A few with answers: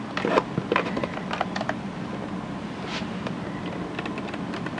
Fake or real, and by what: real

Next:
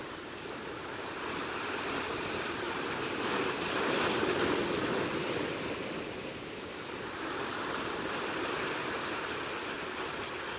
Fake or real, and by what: real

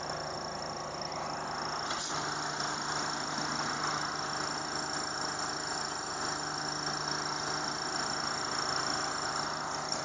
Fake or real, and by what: real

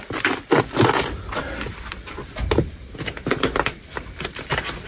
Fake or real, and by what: real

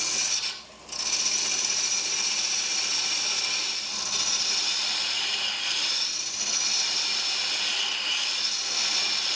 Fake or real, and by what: real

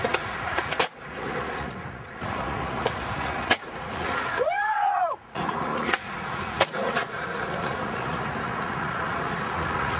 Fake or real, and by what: fake, vocoder, Vocos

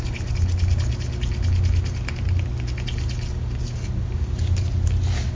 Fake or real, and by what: real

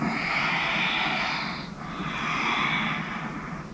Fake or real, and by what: real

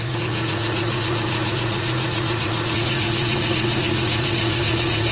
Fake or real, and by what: fake, vocoder, Vocos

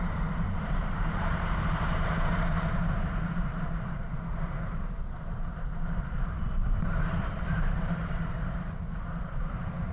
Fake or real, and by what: fake, vocoder, BigVGAN v2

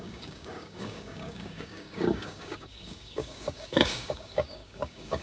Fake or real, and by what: fake, codec, DAC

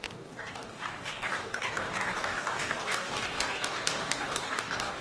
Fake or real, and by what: fake, codec, DAC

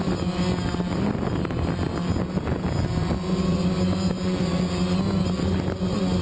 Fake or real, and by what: real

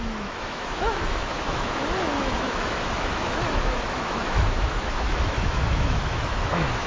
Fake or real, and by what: fake, autoencoder, DAC-VAE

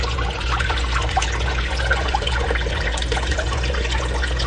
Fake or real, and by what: fake, vocoder, Vocos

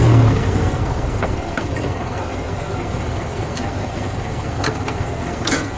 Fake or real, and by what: fake, codec, SNAC